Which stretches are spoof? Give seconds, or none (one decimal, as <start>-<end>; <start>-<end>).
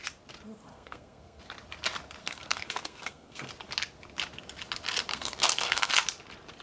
0.7-1.4; 2.2-3.5; 5.1-5.9